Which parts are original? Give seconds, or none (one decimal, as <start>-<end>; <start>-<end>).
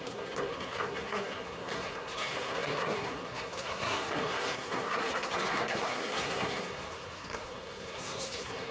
none